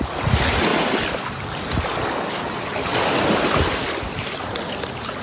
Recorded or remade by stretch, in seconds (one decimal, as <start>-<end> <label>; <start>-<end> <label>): 0.0-5.2 recorded